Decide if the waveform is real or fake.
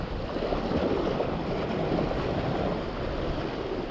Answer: real